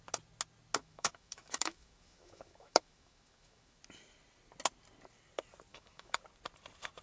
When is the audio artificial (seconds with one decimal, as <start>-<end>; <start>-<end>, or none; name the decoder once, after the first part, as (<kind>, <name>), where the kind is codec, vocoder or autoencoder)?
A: 0.8-3.8 (autoencoder, DAC-VAE); 5.7-6.2